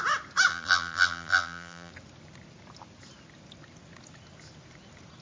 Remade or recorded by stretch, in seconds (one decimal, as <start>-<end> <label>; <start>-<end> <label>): 0.0-0.5 recorded; 0.5-1.9 remade; 1.9-5.2 recorded